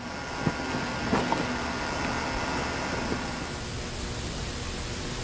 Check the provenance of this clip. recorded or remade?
recorded